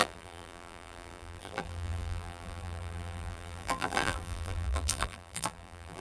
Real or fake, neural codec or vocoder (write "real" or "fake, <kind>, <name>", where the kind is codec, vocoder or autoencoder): fake, vocoder, BigVGAN v2